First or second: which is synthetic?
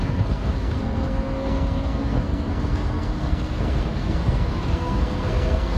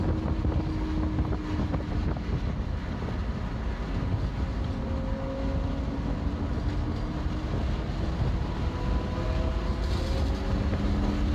first